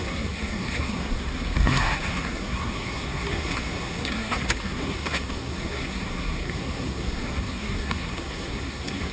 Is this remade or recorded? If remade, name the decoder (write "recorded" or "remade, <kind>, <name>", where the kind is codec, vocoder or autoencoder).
remade, codec, SNAC